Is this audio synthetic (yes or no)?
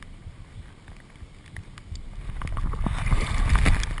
no